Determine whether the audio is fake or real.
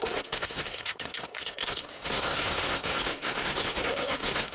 fake